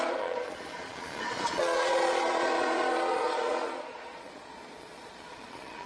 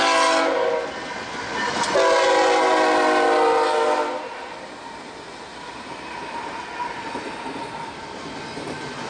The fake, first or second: first